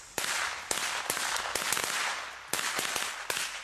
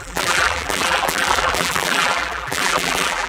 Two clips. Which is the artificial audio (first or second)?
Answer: second